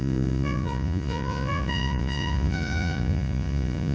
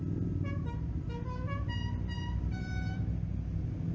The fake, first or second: first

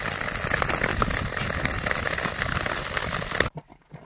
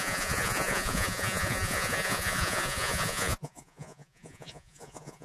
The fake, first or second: second